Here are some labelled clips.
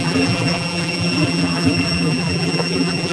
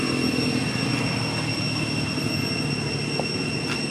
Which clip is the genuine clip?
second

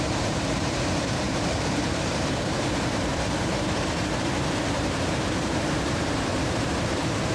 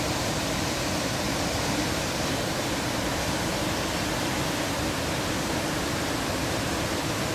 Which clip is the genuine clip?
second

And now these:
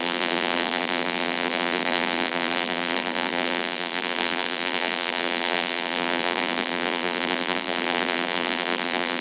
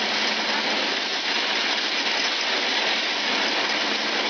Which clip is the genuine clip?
second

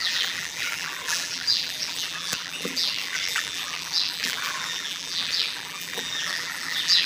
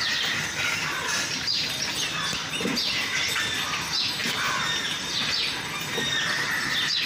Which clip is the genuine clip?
second